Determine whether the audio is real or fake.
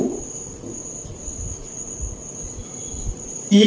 fake